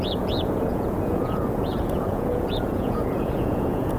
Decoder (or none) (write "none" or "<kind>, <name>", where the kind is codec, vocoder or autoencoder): vocoder, Vocos